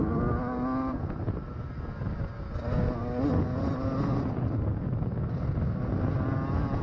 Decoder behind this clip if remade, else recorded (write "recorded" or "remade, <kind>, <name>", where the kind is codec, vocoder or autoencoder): recorded